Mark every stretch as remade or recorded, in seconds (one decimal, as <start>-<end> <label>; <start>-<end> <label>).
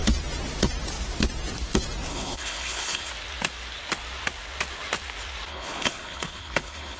0.0-2.1 recorded; 2.1-3.1 remade; 3.1-5.5 recorded; 5.5-7.0 remade